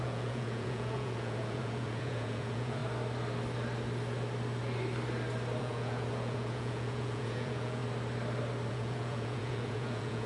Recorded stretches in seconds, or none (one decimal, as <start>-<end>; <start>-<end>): 2.8-5.6; 7.8-8.7